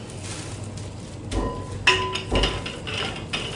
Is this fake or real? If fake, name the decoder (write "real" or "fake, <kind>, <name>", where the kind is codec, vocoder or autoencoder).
real